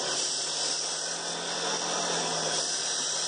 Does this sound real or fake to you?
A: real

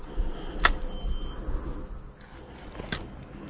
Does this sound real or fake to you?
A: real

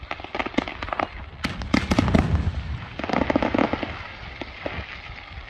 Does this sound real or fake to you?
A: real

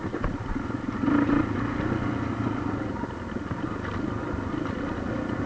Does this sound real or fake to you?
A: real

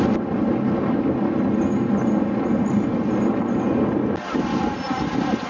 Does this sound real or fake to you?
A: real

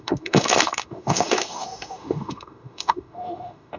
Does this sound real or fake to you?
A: fake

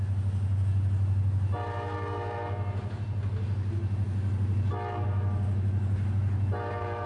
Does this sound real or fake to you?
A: real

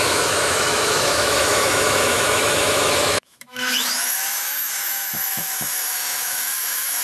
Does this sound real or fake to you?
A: fake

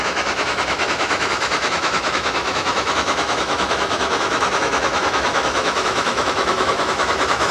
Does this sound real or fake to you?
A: fake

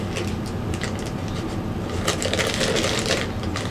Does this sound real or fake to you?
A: real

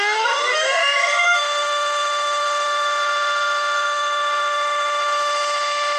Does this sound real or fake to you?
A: fake